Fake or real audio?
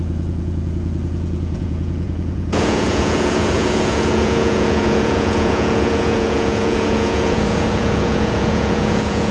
fake